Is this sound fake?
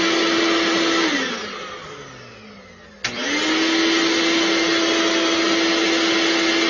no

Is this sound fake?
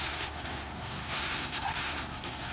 yes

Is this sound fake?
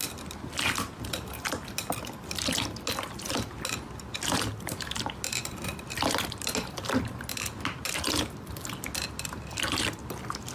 no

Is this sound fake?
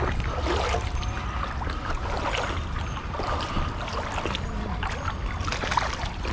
no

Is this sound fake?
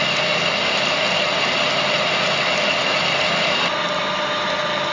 no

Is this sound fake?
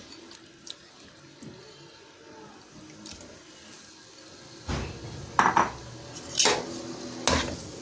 no